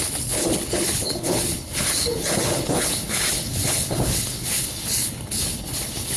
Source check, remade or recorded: remade